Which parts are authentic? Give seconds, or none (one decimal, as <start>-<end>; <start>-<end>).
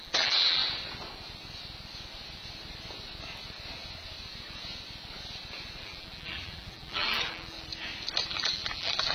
0.6-5.8; 7.7-8.3